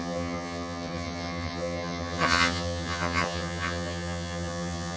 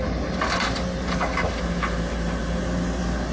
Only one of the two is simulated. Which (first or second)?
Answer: first